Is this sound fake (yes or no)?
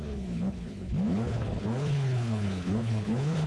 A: yes